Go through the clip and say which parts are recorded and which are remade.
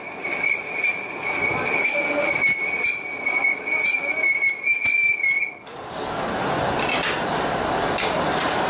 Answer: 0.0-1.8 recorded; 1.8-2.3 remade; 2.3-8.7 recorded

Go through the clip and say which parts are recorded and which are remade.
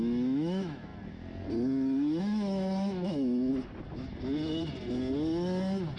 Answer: 0.0-0.9 remade; 0.9-2.2 recorded; 2.2-3.5 remade; 3.5-6.0 recorded